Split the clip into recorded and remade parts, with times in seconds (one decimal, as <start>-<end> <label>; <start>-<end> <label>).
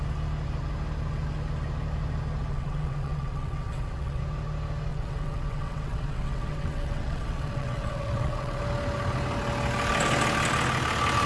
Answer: 0.0-2.5 recorded; 2.5-4.2 remade; 4.2-4.9 recorded; 4.9-8.6 remade; 8.6-11.3 recorded